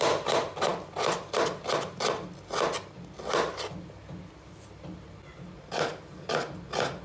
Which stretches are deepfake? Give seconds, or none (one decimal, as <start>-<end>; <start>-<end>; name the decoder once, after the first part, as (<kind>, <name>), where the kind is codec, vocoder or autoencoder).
none